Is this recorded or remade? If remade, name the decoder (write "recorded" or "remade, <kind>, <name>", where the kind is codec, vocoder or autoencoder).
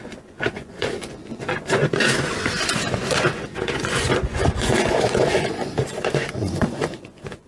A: remade, vocoder, Vocos